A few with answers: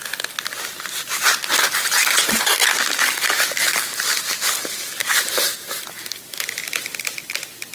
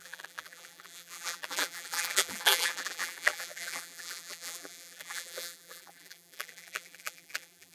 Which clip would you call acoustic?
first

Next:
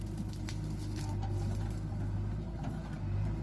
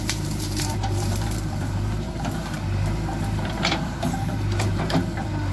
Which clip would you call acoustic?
first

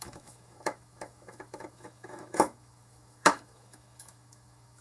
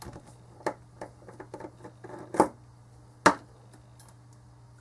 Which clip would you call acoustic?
second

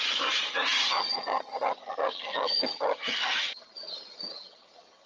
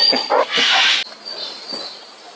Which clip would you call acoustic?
second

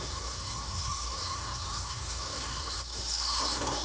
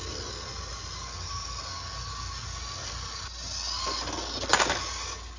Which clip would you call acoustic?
second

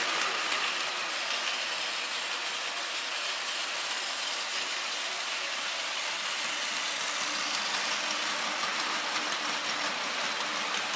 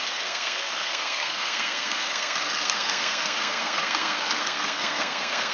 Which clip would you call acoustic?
first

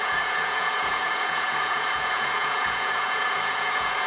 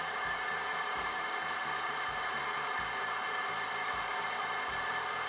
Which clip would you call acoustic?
second